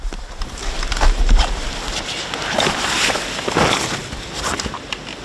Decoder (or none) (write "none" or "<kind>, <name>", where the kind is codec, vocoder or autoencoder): none